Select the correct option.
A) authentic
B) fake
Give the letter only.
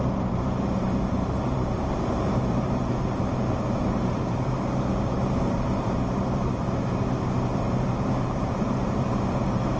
B